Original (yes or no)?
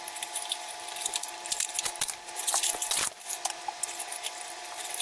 no